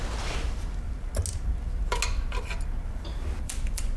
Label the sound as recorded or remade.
recorded